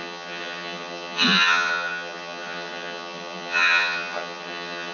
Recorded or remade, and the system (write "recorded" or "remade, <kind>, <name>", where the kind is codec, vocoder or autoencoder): remade, vocoder, HiFi-GAN